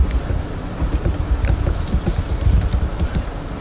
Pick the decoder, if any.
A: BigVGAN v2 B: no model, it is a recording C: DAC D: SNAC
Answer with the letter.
A